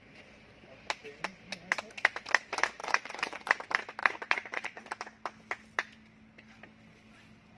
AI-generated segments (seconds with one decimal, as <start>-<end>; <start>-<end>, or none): 2.8-3.6; 4.0-4.8